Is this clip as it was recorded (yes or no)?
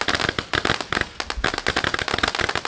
yes